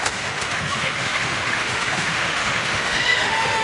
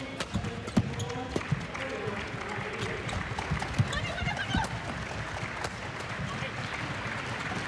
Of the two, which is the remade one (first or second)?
first